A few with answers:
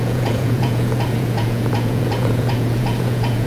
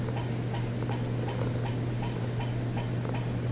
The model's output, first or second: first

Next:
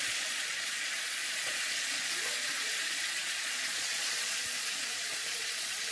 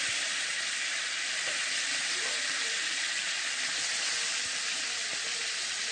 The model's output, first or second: first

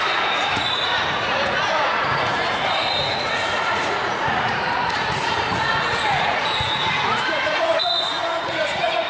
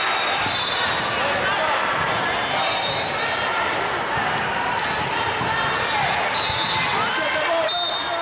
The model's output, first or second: first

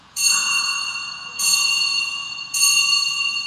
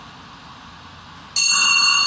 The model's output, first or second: first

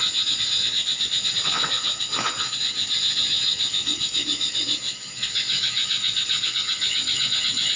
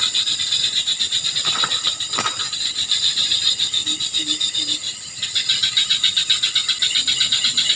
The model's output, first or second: first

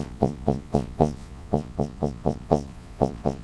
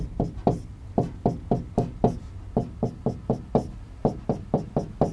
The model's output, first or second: first